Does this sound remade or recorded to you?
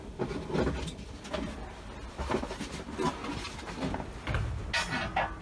recorded